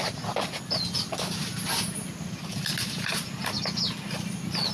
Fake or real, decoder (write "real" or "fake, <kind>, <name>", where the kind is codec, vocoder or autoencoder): real